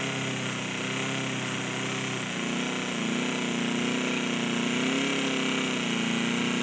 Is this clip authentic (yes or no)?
yes